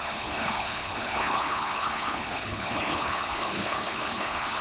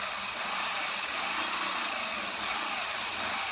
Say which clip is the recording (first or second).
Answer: second